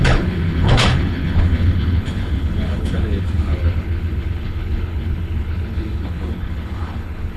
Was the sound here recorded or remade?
remade